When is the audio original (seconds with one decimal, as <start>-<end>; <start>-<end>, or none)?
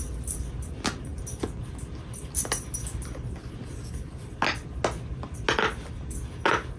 0.0-6.8